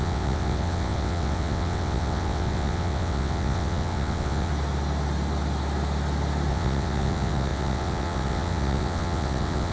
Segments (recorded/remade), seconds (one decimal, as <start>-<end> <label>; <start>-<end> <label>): 0.0-4.5 remade; 4.5-6.5 recorded; 6.5-9.7 remade